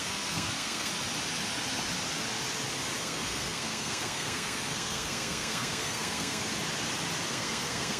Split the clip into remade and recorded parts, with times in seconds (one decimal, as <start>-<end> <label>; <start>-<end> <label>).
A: 0.0-0.9 remade; 0.9-3.0 recorded; 3.0-6.5 remade; 6.5-7.3 recorded; 7.3-8.0 remade